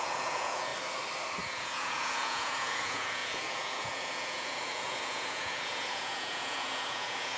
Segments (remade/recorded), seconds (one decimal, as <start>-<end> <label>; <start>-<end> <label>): 0.0-0.7 remade; 0.7-1.4 recorded; 1.4-7.4 remade

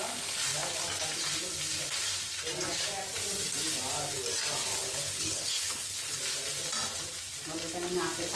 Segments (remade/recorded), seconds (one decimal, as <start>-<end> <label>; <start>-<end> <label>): 0.0-4.7 recorded; 4.7-6.2 remade; 6.2-8.4 recorded

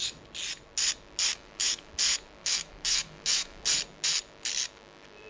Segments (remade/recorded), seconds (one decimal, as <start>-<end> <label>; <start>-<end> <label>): 0.0-1.3 recorded; 1.3-1.9 remade; 1.9-2.4 recorded; 2.4-3.6 remade; 3.6-5.3 recorded

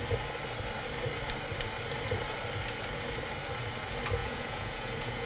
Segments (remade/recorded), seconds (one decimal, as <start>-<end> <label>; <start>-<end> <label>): 0.0-4.2 recorded; 4.2-5.3 remade

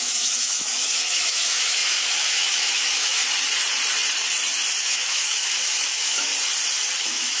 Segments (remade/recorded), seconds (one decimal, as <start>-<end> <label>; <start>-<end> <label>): 0.0-3.2 remade; 3.2-4.8 recorded; 4.8-6.3 remade; 6.3-7.0 recorded; 7.0-7.4 remade

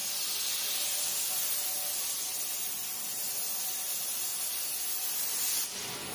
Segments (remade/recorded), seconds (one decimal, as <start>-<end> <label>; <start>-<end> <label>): 0.0-6.1 recorded